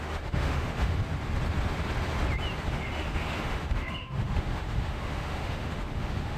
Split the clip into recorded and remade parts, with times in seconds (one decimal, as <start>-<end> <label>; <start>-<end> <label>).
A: 0.0-1.0 remade; 1.0-2.7 recorded; 2.7-6.4 remade

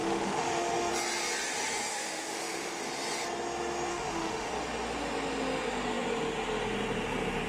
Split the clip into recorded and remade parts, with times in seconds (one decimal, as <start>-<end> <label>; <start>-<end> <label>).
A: 0.0-0.9 remade; 0.9-1.9 recorded; 1.9-2.8 remade; 2.8-3.9 recorded; 3.9-4.5 remade; 4.5-7.5 recorded

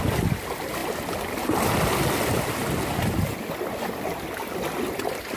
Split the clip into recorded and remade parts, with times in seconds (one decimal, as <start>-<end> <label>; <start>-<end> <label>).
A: 0.0-5.4 recorded

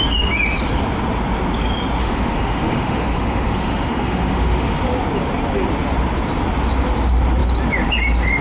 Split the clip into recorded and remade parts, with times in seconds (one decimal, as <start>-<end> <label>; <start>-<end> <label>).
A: 0.0-2.0 recorded; 2.0-4.8 remade; 4.8-8.4 recorded

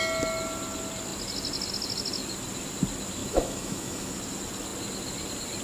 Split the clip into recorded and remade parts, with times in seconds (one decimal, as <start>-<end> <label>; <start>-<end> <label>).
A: 0.0-3.2 recorded; 3.2-4.1 remade; 4.1-5.6 recorded

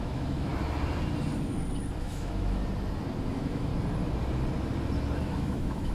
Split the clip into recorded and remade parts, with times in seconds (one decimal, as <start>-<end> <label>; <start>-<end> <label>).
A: 0.0-0.5 remade; 0.5-2.0 recorded; 2.0-2.6 remade; 2.6-3.3 recorded; 3.3-3.7 remade; 3.7-5.2 recorded; 5.2-5.9 remade